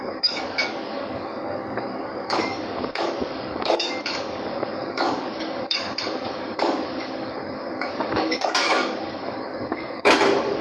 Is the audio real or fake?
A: fake